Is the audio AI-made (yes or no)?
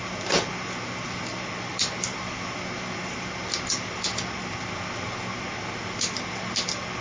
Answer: no